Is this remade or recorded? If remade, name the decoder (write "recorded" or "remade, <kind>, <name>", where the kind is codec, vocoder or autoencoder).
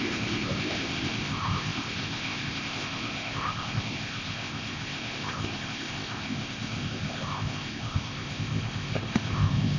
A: remade, codec, ZipCodec